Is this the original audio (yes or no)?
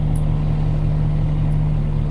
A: yes